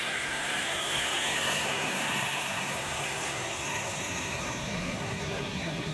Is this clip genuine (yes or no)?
no